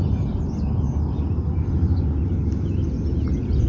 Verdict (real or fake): real